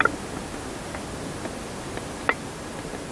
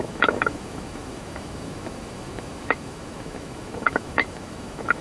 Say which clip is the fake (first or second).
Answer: second